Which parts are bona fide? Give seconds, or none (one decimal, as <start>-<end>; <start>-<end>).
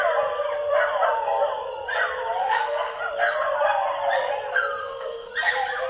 0.0-2.4; 3.0-4.8; 5.3-5.9